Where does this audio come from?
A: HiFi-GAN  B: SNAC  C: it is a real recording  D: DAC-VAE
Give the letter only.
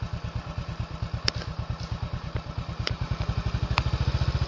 C